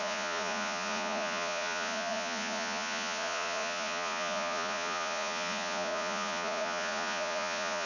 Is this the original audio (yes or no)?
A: no